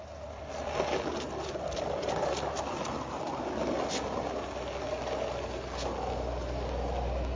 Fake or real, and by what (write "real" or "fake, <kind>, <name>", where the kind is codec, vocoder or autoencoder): real